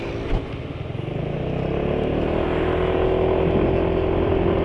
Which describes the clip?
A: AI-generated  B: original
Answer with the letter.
B